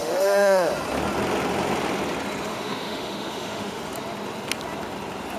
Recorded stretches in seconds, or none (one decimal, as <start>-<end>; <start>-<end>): 0.7-2.5; 3.8-5.4